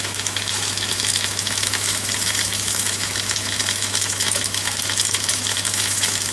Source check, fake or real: fake